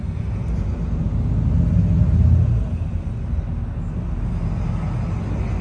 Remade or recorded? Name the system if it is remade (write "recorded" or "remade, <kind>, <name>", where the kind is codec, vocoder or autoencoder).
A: recorded